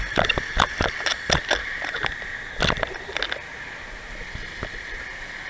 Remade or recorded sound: recorded